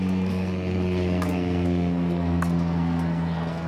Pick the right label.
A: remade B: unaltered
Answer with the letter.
A